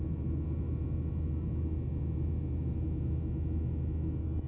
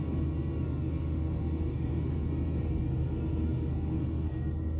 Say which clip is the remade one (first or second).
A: second